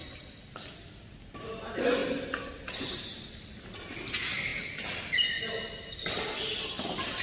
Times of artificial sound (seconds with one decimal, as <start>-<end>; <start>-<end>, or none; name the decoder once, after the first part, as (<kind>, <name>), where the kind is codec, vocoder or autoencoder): none